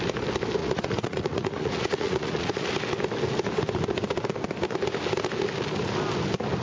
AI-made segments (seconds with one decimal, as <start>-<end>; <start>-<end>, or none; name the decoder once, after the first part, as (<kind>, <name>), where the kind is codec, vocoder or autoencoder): 0.6-2.7 (vocoder, Vocos)